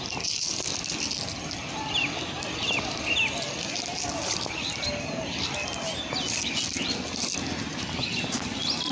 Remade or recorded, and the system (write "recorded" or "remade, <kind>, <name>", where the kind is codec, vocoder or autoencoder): recorded